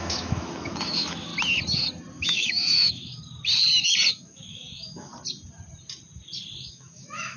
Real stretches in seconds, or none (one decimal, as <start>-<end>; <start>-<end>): 1.3-2.1; 3.1-4.1; 5.1-6.7